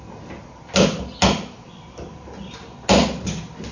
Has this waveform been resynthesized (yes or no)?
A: no